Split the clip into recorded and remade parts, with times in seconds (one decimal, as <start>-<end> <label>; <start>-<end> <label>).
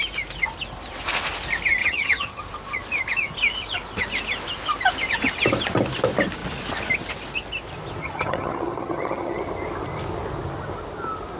0.0-1.8 recorded; 1.8-2.4 remade; 2.4-8.0 recorded; 8.0-9.4 remade; 9.4-11.4 recorded